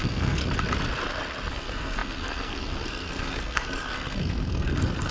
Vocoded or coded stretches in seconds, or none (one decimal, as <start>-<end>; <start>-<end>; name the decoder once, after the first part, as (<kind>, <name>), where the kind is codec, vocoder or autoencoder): 0.0-0.4 (codec, SNAC); 1.5-5.1